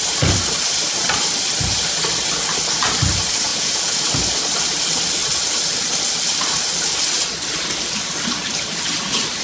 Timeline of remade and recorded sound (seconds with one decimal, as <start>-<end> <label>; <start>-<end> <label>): 0.0-3.5 recorded; 3.5-4.0 remade; 4.0-9.4 recorded